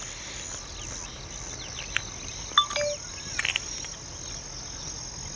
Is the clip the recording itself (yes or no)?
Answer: yes